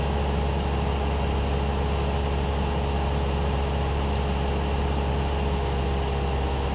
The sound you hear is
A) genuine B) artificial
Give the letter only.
A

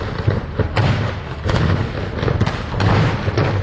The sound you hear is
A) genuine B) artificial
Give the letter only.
A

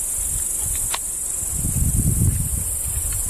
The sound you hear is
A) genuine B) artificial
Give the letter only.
A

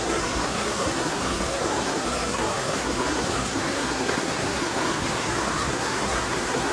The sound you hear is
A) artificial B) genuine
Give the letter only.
A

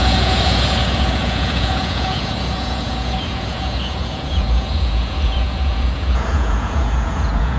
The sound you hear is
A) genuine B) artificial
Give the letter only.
B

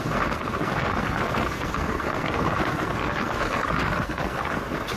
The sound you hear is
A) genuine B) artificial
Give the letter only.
B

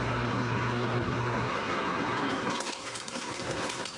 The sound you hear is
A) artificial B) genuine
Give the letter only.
A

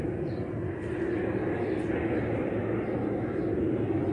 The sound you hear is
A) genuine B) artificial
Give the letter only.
A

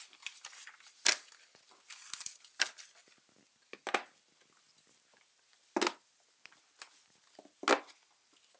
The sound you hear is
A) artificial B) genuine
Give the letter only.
B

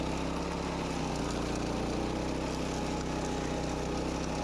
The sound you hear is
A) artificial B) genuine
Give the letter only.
B